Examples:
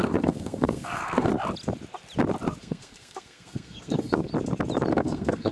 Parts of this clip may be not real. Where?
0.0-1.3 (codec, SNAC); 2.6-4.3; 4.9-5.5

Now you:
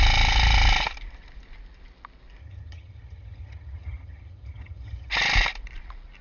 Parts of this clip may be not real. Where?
2.4-5.1 (vocoder, HiFi-GAN)

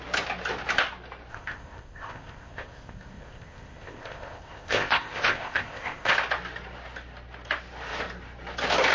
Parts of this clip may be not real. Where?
1.3-6.1 (codec, ZipCodec)

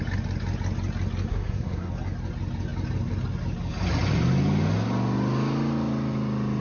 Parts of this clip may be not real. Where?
1.3-1.9 (codec, SNAC)

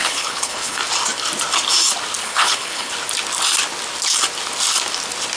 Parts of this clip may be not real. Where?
0.0-0.8 (codec, HILCodec); 2.2-2.9

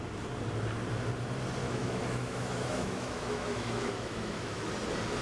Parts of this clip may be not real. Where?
1.6-4.7 (autoencoder, DAC-VAE)

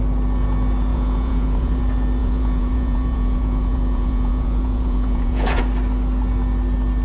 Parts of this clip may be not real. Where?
0.9-1.8 (vocoder, Vocos); 2.2-5.6

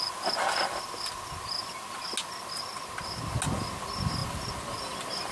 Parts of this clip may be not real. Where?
none